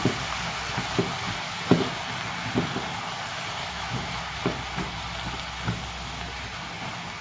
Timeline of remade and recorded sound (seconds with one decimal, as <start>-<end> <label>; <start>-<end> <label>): 0.0-3.6 recorded; 3.6-4.4 remade; 4.4-7.2 recorded